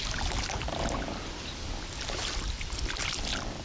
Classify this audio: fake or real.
real